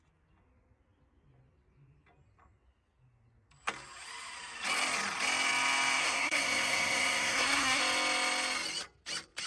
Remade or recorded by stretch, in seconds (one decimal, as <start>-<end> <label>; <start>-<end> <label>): 0.0-6.0 recorded; 6.0-7.8 remade; 7.8-9.5 recorded